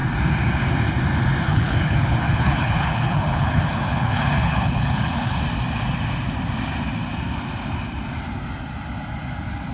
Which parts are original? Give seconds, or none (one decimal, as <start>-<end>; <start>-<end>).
0.0-1.5; 5.4-9.7